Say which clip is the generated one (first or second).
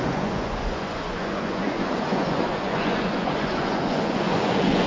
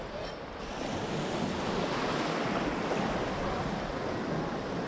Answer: first